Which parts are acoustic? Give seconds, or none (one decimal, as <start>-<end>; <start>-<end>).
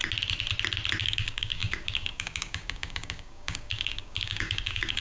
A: 0.0-1.0